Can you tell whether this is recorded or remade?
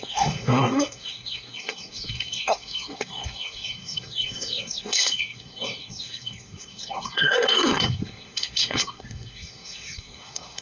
remade